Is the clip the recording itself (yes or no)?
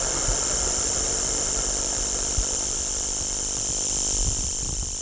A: no